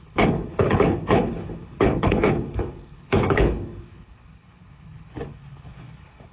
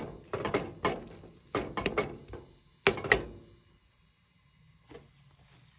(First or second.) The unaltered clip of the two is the second